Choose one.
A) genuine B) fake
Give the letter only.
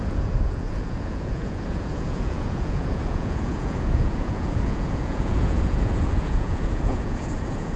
B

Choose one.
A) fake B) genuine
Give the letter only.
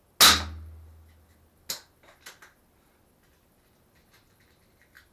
B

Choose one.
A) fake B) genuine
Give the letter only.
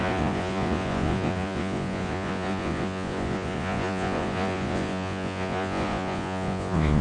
A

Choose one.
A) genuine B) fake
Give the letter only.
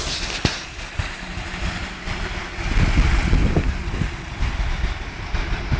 A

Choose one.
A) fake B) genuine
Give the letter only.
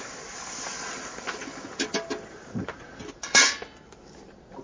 B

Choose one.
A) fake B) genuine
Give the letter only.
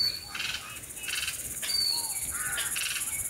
B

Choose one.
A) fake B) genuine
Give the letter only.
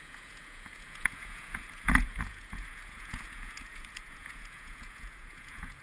A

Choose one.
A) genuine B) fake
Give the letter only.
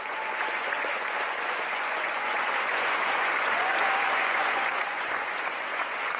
B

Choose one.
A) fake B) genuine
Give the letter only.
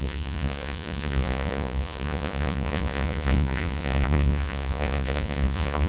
A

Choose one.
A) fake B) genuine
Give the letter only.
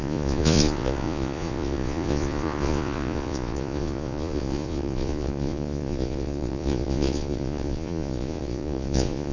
A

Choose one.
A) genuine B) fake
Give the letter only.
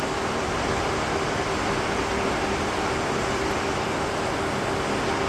A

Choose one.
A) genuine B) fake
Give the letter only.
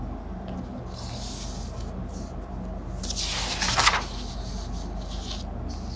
A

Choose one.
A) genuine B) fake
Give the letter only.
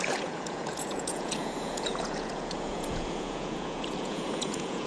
B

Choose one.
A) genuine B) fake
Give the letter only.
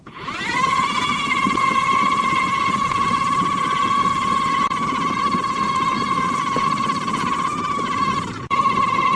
B